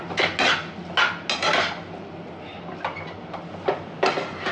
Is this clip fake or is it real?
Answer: real